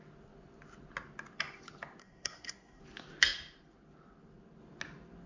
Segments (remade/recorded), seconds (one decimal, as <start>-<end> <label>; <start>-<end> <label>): 0.0-2.0 recorded; 2.0-2.8 remade; 2.8-5.3 recorded